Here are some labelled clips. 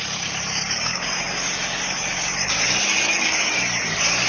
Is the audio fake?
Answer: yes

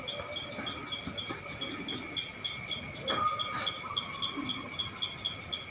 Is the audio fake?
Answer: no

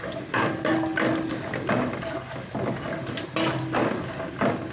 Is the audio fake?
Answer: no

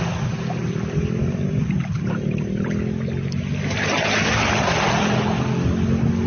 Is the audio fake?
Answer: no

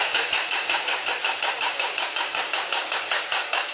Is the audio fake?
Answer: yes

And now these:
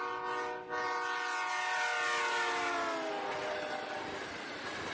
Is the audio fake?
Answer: no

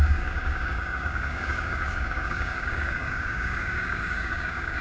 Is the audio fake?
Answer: yes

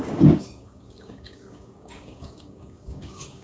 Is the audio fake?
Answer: yes